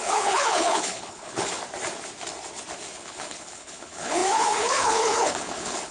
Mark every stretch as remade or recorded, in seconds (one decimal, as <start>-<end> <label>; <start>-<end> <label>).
0.0-1.6 remade; 1.6-2.9 recorded; 2.9-5.9 remade